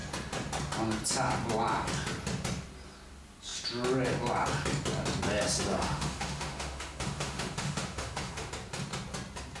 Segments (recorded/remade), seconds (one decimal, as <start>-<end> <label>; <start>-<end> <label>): 0.0-5.7 recorded; 5.7-8.5 remade; 8.5-9.6 recorded